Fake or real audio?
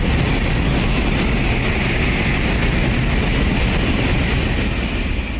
real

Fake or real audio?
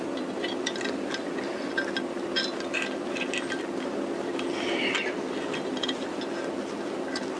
real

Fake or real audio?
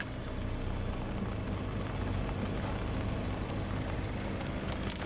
real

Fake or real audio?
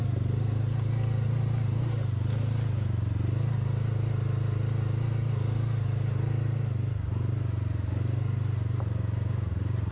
real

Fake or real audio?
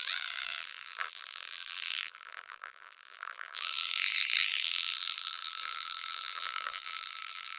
fake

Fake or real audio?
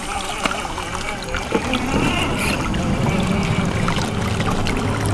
real